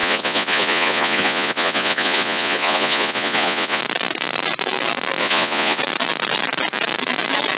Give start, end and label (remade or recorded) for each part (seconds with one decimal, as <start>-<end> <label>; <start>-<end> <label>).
0.0-3.8 remade; 3.8-5.2 recorded; 5.2-5.8 remade; 5.8-7.6 recorded